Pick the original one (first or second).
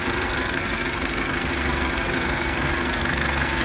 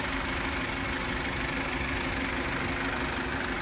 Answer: second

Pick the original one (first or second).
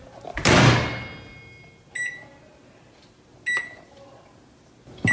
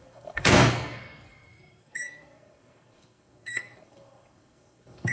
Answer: first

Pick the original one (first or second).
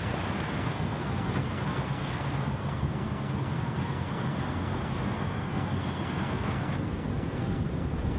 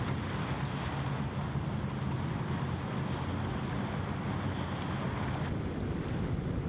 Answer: second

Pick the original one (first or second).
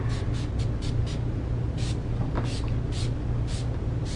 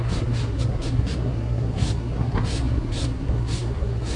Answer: first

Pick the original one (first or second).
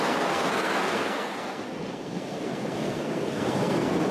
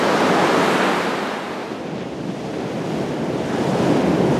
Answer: second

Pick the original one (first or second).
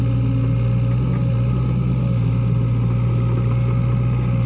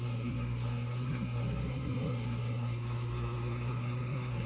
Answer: first